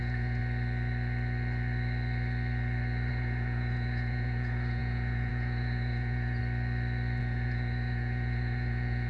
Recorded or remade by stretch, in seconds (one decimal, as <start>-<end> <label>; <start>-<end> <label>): 0.0-0.4 remade; 0.4-3.1 recorded; 3.1-6.4 remade; 6.4-7.2 recorded; 7.2-9.1 remade

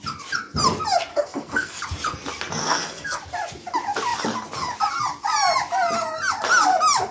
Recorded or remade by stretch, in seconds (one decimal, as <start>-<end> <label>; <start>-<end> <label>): 0.0-1.1 recorded; 1.1-1.8 remade; 1.8-2.6 recorded; 2.6-3.2 remade; 3.2-7.1 recorded

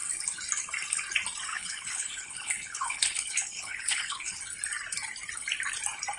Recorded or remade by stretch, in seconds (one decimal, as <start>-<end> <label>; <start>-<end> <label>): 0.0-1.5 recorded; 1.5-4.4 remade; 4.4-6.2 recorded